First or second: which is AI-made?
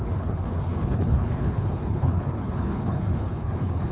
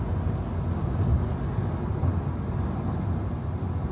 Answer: first